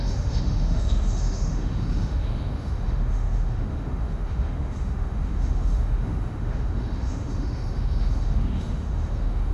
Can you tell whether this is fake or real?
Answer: fake